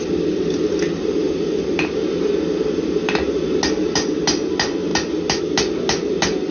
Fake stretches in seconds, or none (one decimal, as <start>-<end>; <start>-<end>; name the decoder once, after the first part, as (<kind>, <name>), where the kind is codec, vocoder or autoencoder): none